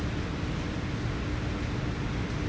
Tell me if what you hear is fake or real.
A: real